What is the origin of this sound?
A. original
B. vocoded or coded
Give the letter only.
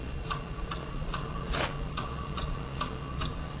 B